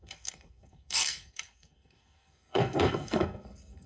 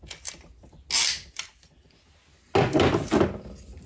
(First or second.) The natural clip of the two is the second